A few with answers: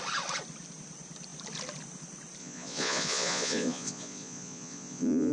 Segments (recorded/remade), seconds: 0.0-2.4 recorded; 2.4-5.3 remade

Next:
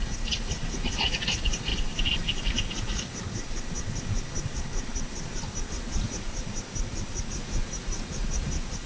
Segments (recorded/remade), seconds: 0.0-1.7 remade; 1.7-5.7 recorded; 5.7-6.3 remade; 6.3-7.3 recorded; 7.3-8.9 remade

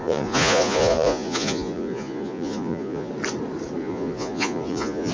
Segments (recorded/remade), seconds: 0.0-3.1 remade; 3.1-3.8 recorded; 3.8-5.1 remade